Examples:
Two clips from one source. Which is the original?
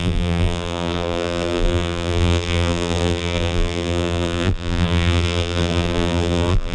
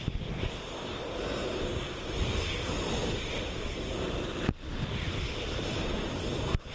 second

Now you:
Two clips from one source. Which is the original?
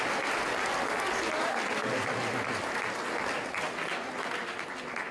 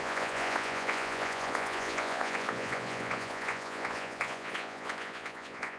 first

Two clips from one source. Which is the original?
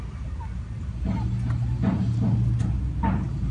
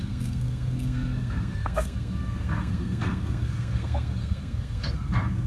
first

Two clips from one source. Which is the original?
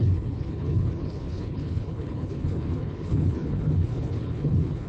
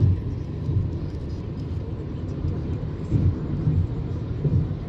second